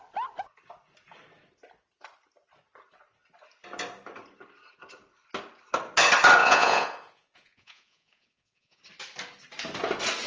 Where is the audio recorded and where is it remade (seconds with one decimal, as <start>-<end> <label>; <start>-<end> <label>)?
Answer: 0.0-6.4 recorded; 6.4-8.8 remade; 8.8-10.3 recorded